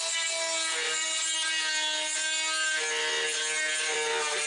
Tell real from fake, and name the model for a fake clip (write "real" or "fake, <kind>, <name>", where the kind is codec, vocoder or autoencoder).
real